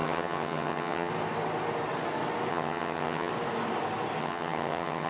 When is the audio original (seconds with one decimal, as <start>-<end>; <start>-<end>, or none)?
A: 1.1-2.5; 3.3-4.2